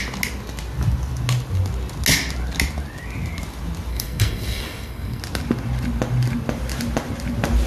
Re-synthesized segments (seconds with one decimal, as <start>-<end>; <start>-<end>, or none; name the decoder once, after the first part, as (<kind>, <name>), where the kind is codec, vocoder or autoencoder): 3.9-5.2 (codec, SNAC)